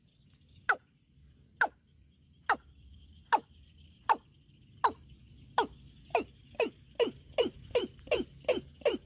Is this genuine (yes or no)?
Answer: yes